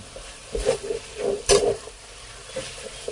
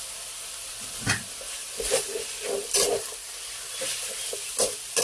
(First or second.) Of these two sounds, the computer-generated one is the first